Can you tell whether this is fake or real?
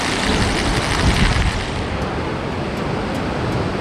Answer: real